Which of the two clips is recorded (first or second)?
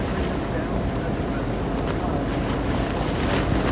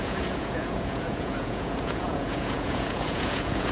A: first